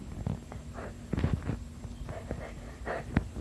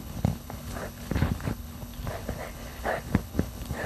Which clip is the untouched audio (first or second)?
first